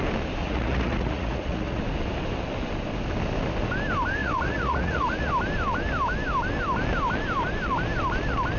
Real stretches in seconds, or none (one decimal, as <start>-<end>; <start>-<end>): 0.0-0.4; 1.8-4.2; 5.3-8.6